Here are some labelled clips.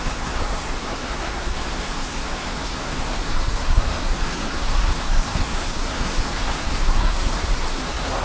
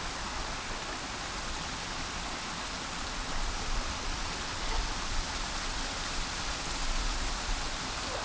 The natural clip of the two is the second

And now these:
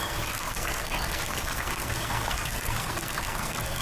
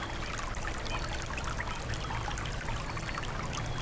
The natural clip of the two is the second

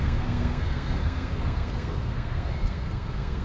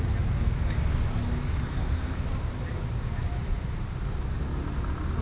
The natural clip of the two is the second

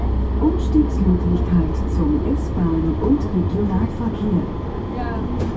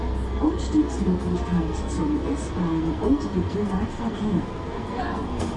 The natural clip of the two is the first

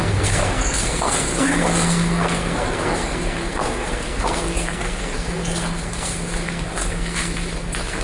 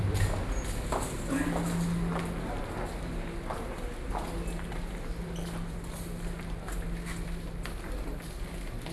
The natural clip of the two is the second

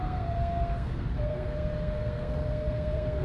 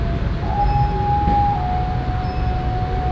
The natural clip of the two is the second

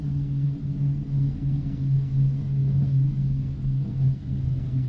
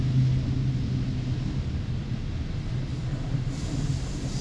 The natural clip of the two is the second